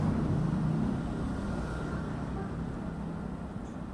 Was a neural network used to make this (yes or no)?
no